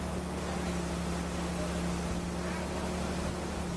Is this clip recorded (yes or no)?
yes